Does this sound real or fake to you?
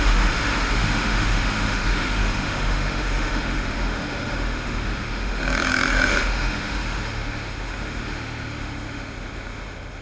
fake